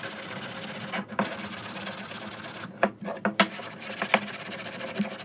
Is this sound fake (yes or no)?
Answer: no